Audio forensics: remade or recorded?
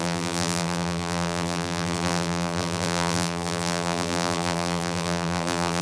remade